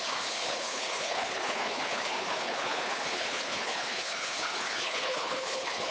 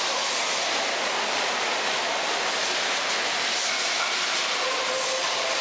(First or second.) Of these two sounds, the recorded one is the second